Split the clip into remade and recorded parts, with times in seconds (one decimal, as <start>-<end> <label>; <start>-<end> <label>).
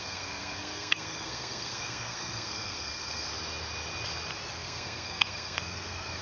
0.0-3.3 remade; 3.3-4.5 recorded; 4.5-6.2 remade